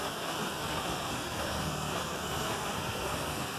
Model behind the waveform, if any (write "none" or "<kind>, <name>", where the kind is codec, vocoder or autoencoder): codec, SNAC